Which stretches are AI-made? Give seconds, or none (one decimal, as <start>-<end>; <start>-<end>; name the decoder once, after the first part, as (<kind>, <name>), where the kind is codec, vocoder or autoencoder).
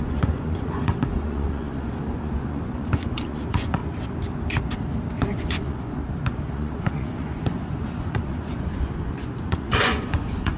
0.0-3.8 (vocoder, Vocos); 5.2-6.0; 6.5-10.6